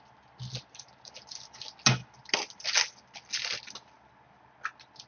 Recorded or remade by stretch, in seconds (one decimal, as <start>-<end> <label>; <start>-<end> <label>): 0.0-5.1 recorded